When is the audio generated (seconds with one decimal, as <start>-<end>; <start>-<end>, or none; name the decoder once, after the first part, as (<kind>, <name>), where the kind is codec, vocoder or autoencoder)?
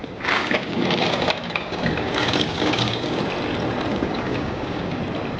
0.0-3.2 (codec, DAC); 3.9-5.0